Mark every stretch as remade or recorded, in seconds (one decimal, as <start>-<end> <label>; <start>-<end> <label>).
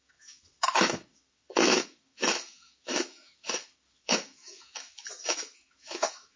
0.0-6.4 remade